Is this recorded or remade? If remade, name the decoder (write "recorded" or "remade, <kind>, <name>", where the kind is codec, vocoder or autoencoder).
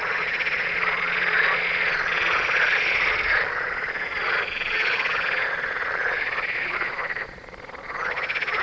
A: remade, vocoder, Vocos